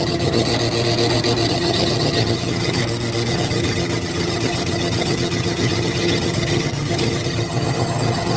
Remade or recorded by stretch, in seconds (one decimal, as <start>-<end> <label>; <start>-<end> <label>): 0.0-0.5 remade; 0.5-1.5 recorded; 1.5-2.8 remade; 2.8-3.3 recorded; 3.3-8.4 remade